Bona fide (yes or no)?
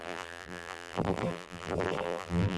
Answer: no